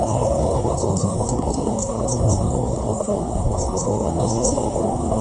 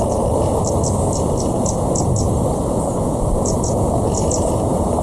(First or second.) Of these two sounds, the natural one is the second